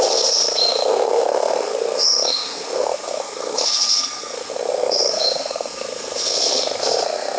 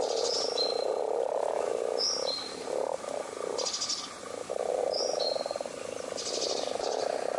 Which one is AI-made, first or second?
first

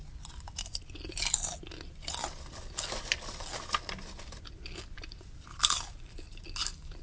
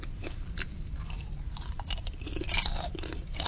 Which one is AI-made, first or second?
second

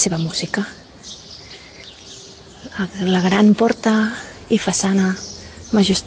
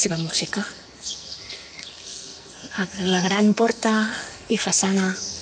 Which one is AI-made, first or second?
second